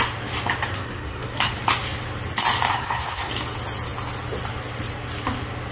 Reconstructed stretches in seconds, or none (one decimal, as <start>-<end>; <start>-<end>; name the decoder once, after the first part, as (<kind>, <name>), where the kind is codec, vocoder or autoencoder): 0.7-1.5 (codec, SNAC); 2.7-3.3